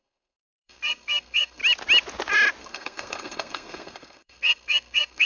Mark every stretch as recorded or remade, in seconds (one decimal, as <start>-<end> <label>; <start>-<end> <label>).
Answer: 0.0-1.6 remade; 1.6-2.6 recorded; 2.6-5.2 remade